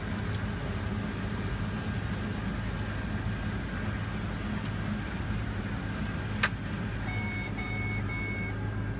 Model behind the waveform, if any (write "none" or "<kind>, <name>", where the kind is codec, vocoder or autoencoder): none